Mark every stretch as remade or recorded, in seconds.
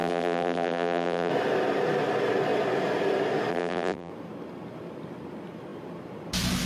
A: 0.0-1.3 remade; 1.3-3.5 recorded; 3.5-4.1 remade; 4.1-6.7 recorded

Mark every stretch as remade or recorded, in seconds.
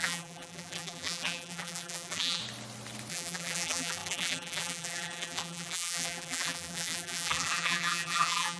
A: 0.0-2.4 remade; 2.4-3.1 recorded; 3.1-8.6 remade